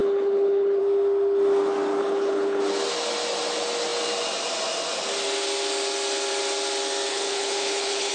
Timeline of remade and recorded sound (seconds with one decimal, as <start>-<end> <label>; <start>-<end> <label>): 0.0-0.8 remade; 0.8-2.0 recorded; 2.0-2.6 remade; 2.6-7.1 recorded; 7.1-8.1 remade